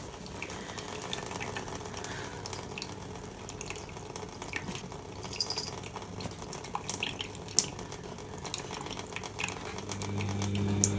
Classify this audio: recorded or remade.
recorded